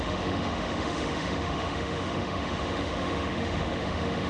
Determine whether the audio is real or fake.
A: fake